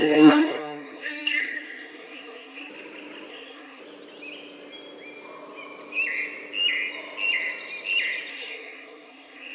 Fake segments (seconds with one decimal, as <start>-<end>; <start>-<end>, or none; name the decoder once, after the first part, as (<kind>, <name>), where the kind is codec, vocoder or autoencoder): 0.0-2.7 (codec, SNAC); 3.3-3.8; 8.3-9.5